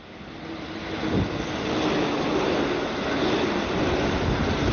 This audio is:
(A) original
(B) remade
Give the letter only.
A